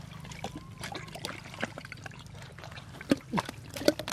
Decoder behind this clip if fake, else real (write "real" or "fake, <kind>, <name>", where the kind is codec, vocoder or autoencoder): real